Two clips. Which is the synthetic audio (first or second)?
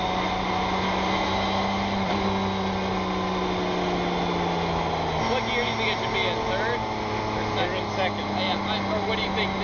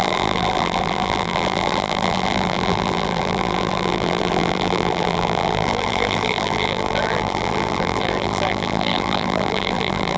second